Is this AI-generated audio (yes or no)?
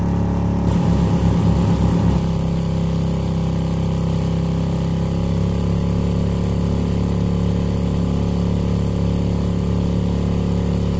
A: no